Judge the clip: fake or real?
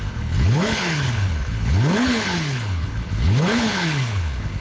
fake